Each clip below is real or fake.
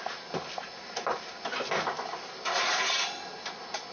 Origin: real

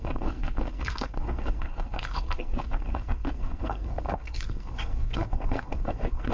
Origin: fake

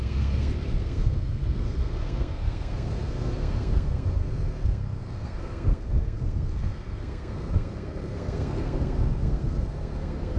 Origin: fake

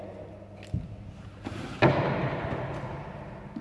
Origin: real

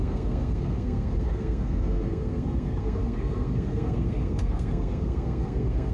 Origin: fake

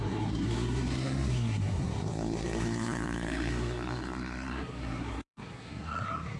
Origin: fake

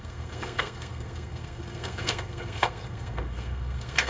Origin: fake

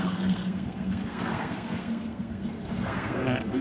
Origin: fake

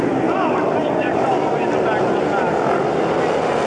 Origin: real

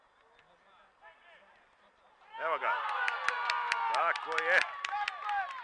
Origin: real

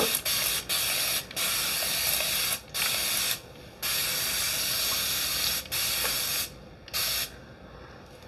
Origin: real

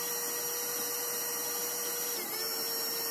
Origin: real